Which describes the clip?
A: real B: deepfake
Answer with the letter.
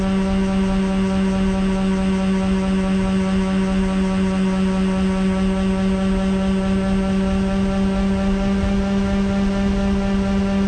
A